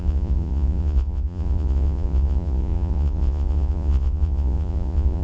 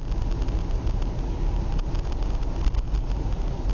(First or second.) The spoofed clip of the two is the first